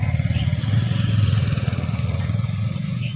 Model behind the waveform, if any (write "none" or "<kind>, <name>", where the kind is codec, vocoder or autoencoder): vocoder, Vocos